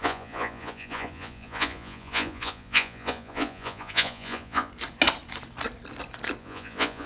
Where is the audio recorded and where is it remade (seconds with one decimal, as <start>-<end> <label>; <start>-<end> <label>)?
0.0-4.7 remade; 4.7-6.4 recorded; 6.4-7.1 remade